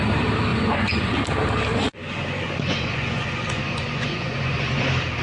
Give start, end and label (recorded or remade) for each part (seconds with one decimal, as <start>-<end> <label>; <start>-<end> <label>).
0.0-0.5 recorded; 0.5-1.1 remade; 1.1-1.7 recorded; 1.7-4.8 remade; 4.8-5.2 recorded